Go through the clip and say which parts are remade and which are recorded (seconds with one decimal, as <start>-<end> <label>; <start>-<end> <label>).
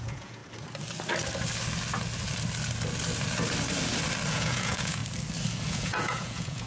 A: 0.0-0.4 remade; 0.4-4.3 recorded; 4.3-5.0 remade; 5.0-5.7 recorded; 5.7-6.7 remade